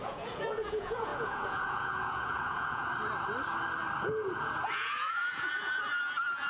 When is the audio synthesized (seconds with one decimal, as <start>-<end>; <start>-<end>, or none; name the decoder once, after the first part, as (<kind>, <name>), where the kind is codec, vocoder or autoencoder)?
0.0-2.9 (vocoder, Vocos); 4.0-6.5